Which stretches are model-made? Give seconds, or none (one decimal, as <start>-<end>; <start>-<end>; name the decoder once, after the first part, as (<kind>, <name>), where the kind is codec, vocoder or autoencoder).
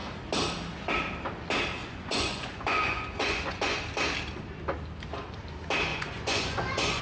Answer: 1.8-3.8 (vocoder, Vocos); 5.9-7.0